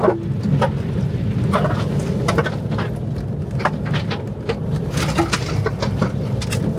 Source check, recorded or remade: recorded